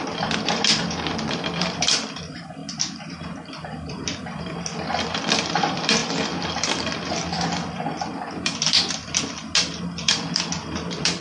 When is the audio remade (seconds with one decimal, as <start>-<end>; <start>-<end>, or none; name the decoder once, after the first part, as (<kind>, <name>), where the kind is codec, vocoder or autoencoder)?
0.0-2.6 (vocoder, BigVGAN v2); 3.5-6.0; 7.1-9.4; 10.1-11.2